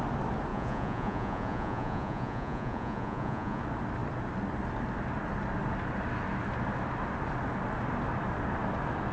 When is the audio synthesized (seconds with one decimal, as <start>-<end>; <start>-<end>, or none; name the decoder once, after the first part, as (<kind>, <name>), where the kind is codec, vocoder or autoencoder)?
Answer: 0.5-3.6 (vocoder, Vocos)